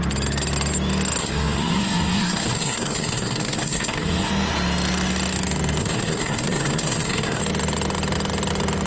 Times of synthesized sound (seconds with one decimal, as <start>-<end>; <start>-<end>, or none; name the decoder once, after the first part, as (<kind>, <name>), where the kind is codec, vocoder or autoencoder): 1.2-4.3 (codec, SNAC); 5.8-7.4

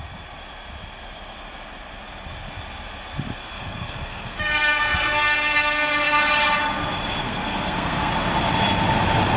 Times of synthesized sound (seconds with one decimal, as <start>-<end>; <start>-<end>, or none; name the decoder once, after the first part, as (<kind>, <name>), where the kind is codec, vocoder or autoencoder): 3.4-6.2 (codec, SNAC); 7.2-8.1

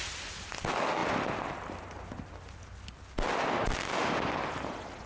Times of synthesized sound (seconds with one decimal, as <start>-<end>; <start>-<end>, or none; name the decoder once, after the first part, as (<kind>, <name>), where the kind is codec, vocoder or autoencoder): none

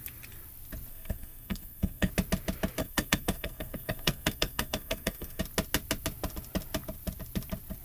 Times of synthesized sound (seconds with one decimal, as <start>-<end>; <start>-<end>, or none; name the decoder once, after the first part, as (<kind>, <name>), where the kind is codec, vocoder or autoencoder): 0.9-2.1 (codec, SNAC); 2.8-5.4

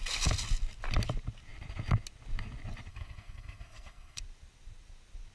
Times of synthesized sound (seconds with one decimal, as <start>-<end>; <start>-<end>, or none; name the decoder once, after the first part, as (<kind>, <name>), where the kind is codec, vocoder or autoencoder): 2.9-4.2 (codec, SNAC)